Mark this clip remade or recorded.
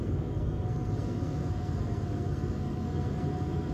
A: remade